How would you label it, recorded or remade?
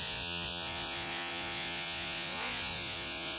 remade